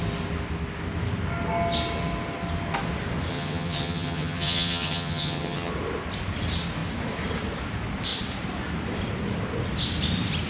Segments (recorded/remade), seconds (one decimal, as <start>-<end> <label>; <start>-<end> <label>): 0.0-3.3 recorded; 3.3-5.7 remade; 5.7-10.5 recorded